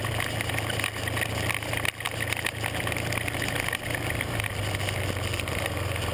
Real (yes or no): yes